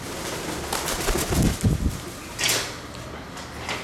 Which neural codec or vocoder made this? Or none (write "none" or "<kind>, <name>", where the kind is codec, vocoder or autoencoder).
none